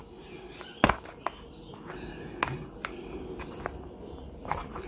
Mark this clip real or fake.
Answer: real